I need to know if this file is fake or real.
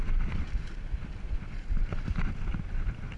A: real